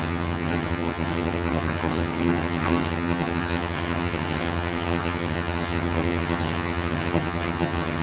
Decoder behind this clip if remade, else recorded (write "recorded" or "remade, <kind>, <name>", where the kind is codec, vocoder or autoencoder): remade, vocoder, HiFi-GAN